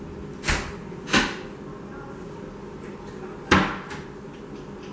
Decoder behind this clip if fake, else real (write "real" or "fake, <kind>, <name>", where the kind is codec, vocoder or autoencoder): real